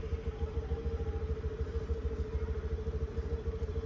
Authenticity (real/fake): real